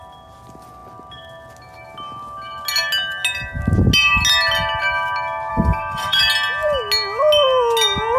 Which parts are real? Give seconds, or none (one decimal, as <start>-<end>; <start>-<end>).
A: 0.0-5.5; 6.2-8.2